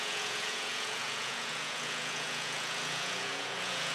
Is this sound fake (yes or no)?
yes